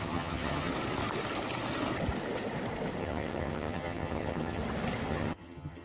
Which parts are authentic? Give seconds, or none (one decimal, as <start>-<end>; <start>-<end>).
0.7-3.0; 4.6-5.1